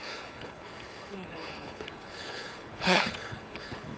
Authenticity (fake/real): fake